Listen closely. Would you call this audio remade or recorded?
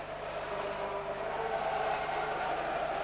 recorded